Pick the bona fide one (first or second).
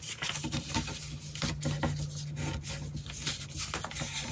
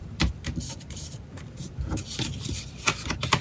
first